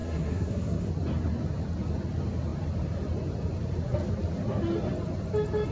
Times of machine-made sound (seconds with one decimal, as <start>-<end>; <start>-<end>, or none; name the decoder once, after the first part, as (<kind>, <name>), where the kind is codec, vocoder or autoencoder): 0.0-0.9 (codec, SNAC)